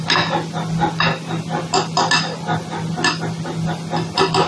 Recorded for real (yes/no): yes